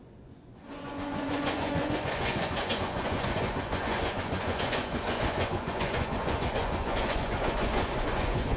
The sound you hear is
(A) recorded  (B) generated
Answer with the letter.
B